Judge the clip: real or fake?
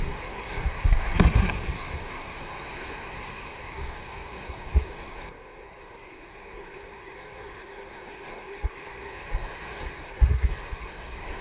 fake